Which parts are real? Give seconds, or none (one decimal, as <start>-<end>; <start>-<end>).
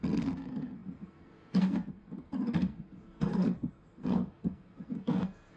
none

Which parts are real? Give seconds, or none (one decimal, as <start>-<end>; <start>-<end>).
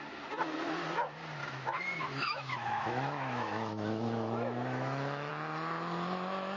0.0-1.4; 5.3-6.6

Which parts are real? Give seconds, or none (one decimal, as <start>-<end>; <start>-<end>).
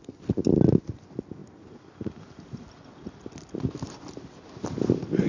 0.0-5.3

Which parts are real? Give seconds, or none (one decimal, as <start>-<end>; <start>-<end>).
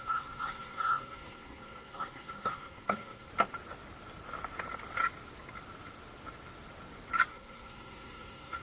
3.3-7.3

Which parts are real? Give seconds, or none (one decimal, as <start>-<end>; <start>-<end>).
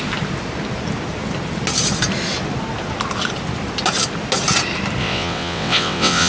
0.0-5.0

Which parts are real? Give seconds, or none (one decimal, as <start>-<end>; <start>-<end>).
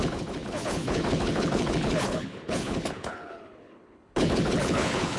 none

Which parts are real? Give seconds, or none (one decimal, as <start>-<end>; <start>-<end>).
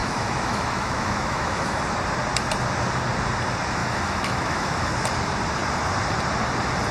1.8-3.8; 4.9-6.9